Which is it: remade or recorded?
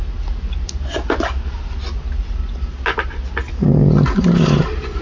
recorded